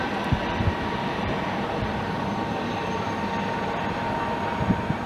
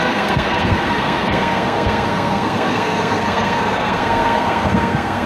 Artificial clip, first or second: second